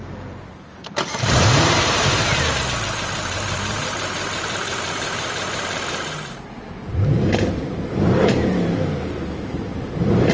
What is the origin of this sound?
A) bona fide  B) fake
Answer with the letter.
B